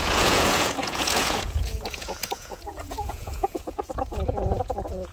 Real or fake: fake